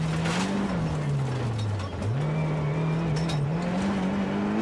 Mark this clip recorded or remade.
recorded